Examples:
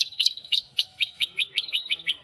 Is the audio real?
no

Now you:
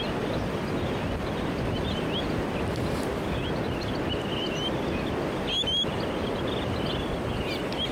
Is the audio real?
yes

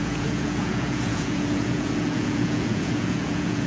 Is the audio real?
no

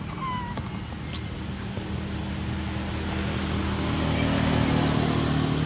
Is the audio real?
yes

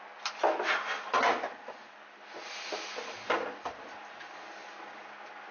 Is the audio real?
yes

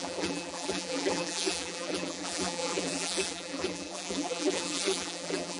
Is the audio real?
no